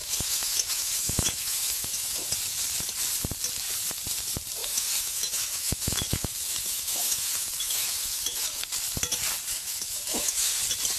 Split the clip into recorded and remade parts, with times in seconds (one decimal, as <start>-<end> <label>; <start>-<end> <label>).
0.0-2.3 remade; 2.3-4.6 recorded; 4.6-8.6 remade; 8.6-9.5 recorded; 9.5-10.6 remade; 10.6-11.0 recorded